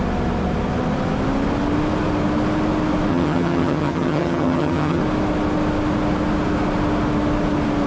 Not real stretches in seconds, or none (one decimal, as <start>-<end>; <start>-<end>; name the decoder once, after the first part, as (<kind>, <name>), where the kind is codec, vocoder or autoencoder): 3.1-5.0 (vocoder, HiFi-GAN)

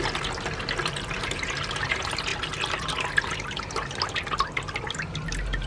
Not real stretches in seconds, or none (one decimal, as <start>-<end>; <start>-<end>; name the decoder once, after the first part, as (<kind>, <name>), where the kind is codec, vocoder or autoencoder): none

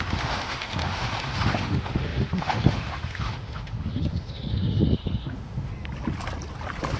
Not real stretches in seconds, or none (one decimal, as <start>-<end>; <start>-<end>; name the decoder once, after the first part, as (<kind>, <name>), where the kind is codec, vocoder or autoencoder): 0.0-5.7 (autoencoder, DAC-VAE)

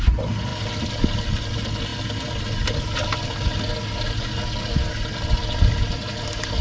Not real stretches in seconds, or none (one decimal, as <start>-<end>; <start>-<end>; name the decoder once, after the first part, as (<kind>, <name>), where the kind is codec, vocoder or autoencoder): none

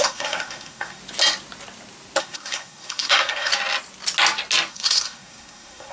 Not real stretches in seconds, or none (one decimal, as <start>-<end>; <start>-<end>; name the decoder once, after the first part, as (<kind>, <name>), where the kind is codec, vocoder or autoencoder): 0.0-1.0 (codec, SNAC); 2.2-3.5; 4.7-5.9

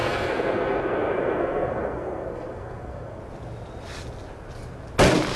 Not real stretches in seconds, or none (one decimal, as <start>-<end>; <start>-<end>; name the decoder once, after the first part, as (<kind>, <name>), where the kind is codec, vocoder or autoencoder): 0.0-3.2 (codec, SNAC)

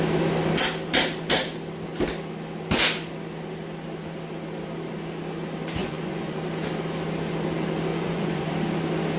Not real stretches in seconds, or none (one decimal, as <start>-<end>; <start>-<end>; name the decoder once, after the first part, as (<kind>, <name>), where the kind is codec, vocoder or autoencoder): 5.8-6.4 (vocoder, Vocos); 7.9-8.5

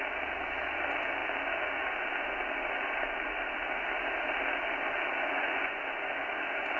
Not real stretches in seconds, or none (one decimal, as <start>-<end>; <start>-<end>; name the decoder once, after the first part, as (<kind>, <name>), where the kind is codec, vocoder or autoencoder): 5.2-5.8 (vocoder, Vocos)